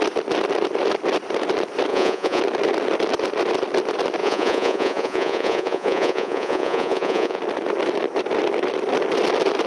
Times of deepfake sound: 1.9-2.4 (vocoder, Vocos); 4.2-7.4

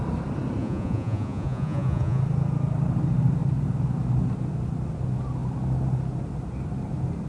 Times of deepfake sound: 0.6-2.2 (vocoder, Vocos)

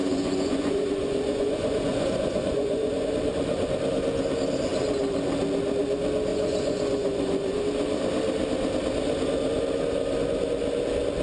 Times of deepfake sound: 0.0-3.1 (vocoder, Vocos); 6.3-7.6

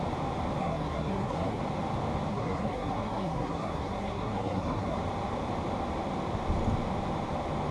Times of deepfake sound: 0.6-1.6 (codec, SNAC); 2.3-5.0

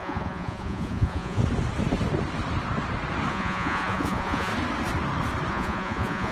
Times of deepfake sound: 0.0-1.4 (vocoder, Vocos); 3.3-4.5; 5.5-6.3